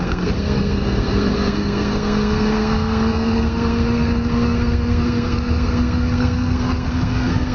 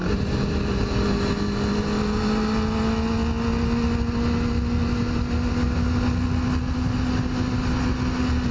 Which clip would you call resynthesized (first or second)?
first